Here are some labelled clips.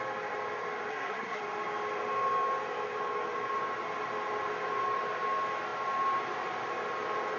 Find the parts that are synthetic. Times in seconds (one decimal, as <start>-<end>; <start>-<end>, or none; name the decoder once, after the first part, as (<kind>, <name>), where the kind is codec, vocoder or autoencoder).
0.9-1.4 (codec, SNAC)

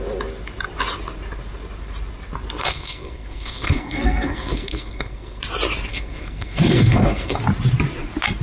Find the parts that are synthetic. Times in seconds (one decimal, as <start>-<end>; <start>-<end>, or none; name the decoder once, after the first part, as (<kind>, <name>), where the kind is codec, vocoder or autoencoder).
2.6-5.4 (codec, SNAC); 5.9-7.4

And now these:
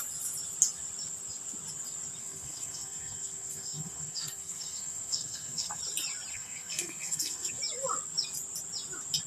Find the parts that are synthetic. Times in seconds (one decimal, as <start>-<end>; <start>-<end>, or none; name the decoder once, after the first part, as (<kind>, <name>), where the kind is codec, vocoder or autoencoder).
2.2-5.8 (codec, SNAC); 6.3-7.6

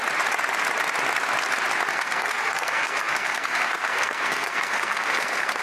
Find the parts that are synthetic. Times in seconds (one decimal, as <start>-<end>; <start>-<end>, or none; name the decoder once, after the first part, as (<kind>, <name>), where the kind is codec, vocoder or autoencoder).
1.9-5.6 (codec, SNAC)

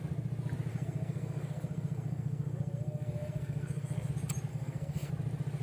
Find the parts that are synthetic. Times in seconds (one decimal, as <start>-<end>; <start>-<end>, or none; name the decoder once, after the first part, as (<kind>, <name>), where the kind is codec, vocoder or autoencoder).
0.7-4.1 (codec, SNAC); 4.5-5.1